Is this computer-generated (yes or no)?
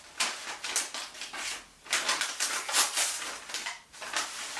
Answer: no